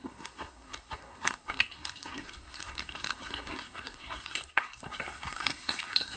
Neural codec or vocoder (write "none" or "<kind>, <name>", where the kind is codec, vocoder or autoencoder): codec, SNAC